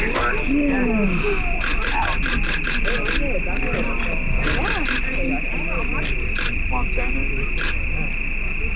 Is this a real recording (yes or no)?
yes